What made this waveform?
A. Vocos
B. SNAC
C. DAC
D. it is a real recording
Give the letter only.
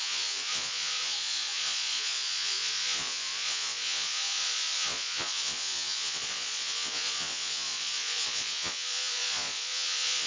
A